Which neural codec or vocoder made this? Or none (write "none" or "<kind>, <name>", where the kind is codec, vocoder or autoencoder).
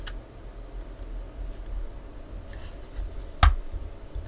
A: none